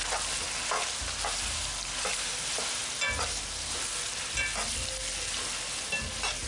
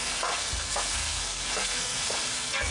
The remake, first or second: second